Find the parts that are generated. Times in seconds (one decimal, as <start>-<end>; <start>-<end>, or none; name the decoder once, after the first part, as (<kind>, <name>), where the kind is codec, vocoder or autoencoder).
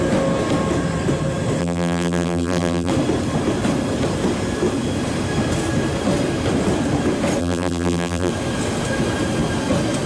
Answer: 1.6-2.9 (vocoder, BigVGAN v2); 7.4-8.3